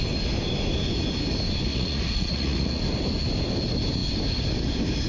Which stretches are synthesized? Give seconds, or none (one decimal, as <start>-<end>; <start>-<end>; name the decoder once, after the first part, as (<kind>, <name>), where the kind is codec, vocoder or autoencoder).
1.7-2.8 (vocoder, Vocos)